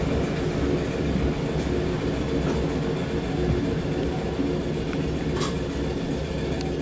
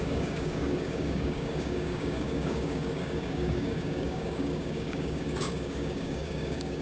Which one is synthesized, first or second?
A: second